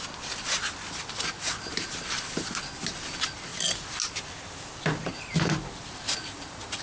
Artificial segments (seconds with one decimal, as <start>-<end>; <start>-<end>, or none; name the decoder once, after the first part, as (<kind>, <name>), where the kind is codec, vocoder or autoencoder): none